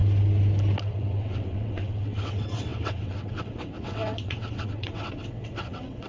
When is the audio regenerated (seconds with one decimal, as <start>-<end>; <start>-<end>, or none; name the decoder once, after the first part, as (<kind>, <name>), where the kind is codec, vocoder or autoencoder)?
0.8-6.1 (vocoder, WaveNeXt)